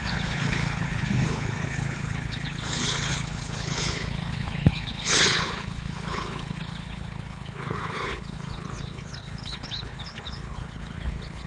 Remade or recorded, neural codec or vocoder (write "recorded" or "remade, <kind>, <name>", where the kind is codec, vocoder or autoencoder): remade, codec, HILCodec